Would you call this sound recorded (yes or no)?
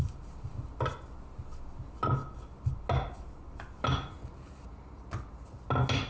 yes